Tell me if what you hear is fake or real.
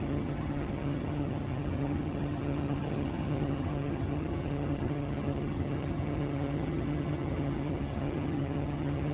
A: fake